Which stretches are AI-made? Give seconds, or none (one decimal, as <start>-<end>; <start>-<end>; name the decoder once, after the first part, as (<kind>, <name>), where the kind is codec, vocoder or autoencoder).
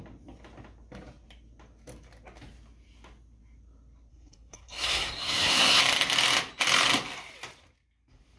4.1-5.8 (codec, SNAC)